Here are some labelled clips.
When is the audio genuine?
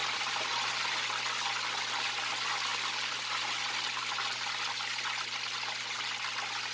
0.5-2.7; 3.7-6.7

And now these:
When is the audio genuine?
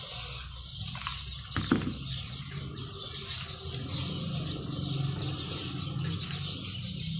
0.0-7.2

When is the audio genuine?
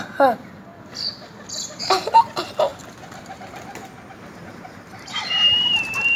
0.7-1.8; 2.7-4.1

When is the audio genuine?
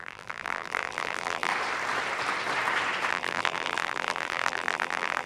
1.5-3.1